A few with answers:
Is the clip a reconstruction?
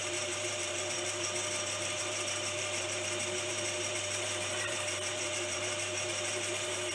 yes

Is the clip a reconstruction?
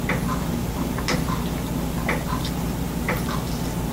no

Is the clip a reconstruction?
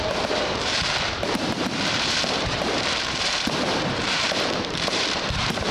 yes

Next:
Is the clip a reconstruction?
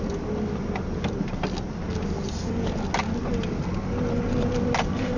no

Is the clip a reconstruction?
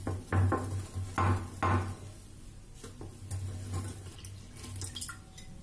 no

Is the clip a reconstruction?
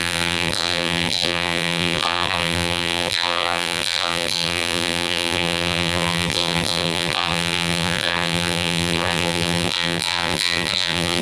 yes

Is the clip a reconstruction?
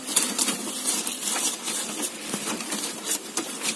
yes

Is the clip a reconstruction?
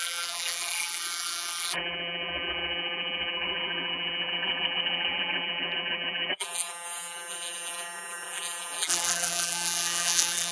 yes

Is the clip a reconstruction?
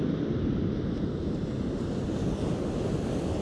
no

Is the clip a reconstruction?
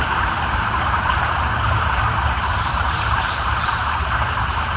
yes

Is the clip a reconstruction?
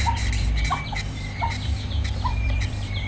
yes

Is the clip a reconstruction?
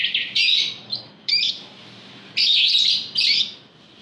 yes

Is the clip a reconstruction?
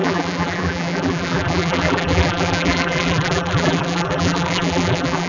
yes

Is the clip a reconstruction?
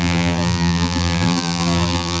yes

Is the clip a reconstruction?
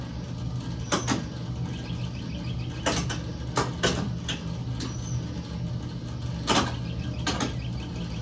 no